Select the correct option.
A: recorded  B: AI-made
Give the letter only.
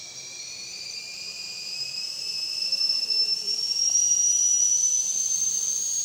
B